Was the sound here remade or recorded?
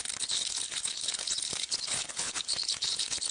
remade